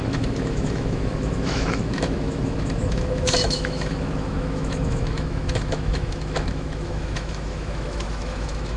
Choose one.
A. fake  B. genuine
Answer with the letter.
A